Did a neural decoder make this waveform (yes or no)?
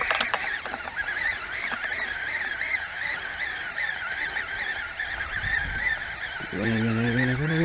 yes